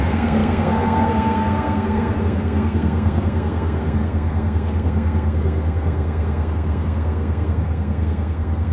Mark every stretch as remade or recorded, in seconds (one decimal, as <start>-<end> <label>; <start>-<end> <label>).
0.0-8.7 remade